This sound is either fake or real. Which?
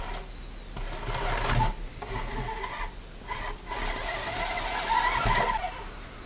real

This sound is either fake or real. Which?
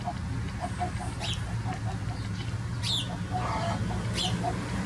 real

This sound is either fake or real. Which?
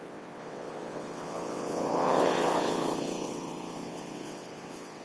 fake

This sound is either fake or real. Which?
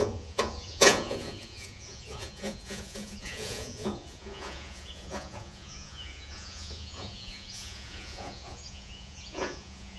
fake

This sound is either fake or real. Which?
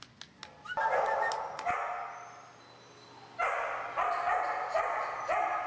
real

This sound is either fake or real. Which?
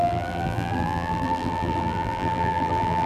fake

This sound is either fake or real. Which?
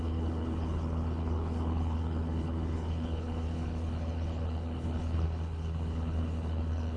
fake